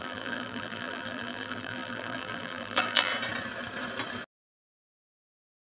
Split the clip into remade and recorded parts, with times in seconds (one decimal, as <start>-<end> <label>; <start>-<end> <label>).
0.0-3.1 remade; 3.1-5.3 recorded; 5.3-5.8 remade